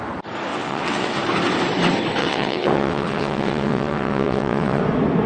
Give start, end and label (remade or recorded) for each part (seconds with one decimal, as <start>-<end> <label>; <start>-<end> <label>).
0.0-0.5 recorded; 0.5-1.2 remade; 1.2-2.2 recorded; 2.2-4.8 remade; 4.8-5.3 recorded